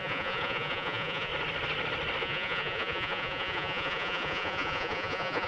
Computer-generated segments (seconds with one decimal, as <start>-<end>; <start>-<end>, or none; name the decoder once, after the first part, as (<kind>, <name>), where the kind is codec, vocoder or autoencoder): 0.0-1.3 (vocoder, Vocos); 2.2-5.5